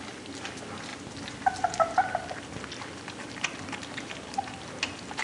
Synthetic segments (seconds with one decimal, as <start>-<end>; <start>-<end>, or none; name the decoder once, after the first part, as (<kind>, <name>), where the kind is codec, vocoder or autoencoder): none